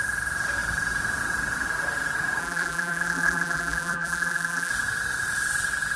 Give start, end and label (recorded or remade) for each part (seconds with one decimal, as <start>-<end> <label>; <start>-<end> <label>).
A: 0.0-2.4 recorded; 2.4-4.7 remade; 4.7-6.0 recorded